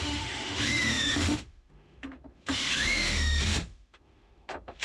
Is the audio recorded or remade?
remade